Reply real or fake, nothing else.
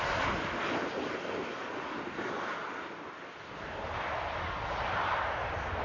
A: real